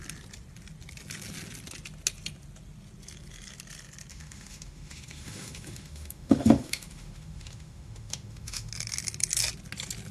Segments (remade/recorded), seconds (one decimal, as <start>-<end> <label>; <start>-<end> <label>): 0.0-4.1 recorded; 4.1-8.7 remade; 8.7-10.1 recorded